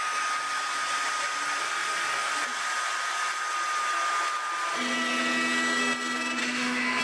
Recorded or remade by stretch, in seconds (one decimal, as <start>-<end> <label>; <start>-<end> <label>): 0.0-1.6 recorded; 1.6-2.3 remade; 2.3-6.4 recorded; 6.4-7.0 remade